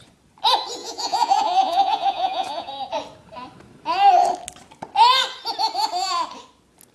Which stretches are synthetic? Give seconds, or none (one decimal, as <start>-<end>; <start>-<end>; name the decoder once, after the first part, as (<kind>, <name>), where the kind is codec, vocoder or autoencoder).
0.8-2.7 (vocoder, Vocos)